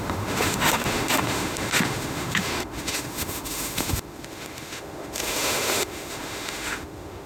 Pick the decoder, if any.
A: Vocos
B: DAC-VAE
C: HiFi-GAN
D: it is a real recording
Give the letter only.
B